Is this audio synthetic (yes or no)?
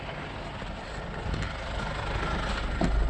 no